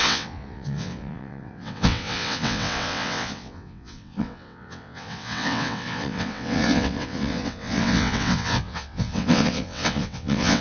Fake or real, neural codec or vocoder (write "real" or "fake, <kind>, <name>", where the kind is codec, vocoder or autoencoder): fake, vocoder, WaveNeXt